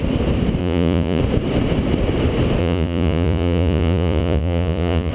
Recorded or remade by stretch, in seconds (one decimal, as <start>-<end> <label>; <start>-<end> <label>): 0.0-0.6 recorded; 0.6-1.2 remade; 1.2-2.6 recorded; 2.6-5.1 remade